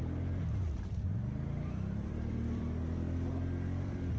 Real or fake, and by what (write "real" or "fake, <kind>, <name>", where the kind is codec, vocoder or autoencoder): fake, vocoder, BigVGAN v2